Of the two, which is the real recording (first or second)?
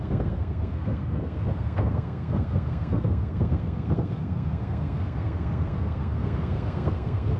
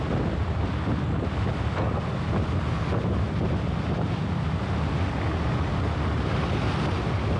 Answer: second